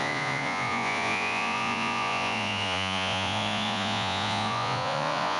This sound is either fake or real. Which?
fake